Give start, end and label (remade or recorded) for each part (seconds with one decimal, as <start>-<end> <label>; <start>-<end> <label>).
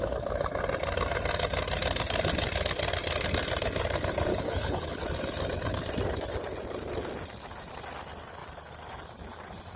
0.0-4.3 recorded; 4.3-5.0 remade; 5.0-9.8 recorded